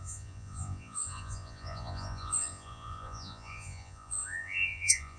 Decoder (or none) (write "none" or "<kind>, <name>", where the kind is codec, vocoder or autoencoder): vocoder, Vocos